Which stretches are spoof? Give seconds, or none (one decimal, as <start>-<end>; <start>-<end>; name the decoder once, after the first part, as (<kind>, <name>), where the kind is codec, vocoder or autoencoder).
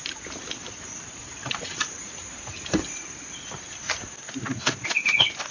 1.2-1.9 (vocoder, WaveNeXt)